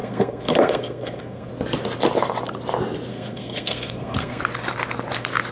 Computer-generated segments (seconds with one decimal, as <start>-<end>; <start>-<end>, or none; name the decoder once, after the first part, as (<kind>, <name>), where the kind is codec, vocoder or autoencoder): 0.0-1.5 (codec, SNAC); 3.1-4.4